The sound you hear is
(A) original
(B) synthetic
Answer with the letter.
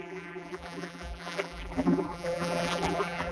B